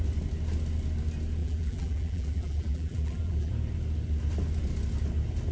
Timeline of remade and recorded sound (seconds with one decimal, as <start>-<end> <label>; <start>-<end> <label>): 0.0-1.4 recorded; 1.4-3.5 remade; 3.5-5.5 recorded